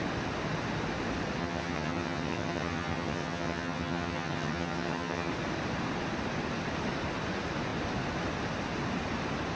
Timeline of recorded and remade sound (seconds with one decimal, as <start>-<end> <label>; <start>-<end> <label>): 0.0-1.4 recorded; 1.4-5.3 remade; 5.3-9.6 recorded